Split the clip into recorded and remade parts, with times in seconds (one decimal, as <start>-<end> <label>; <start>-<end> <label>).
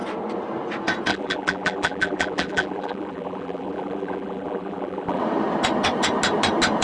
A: 0.0-1.1 recorded; 1.1-5.2 remade; 5.2-6.8 recorded